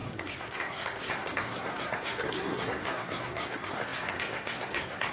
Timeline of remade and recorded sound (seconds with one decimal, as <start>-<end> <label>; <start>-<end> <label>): 0.0-5.1 remade